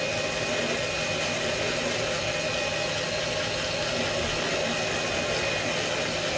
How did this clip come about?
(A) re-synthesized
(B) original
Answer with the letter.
B